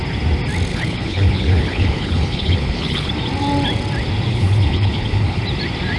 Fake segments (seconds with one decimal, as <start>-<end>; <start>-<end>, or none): 0.7-3.1; 4.3-5.4